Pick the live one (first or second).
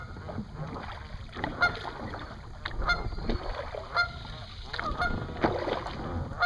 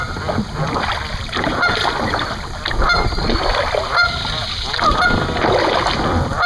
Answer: first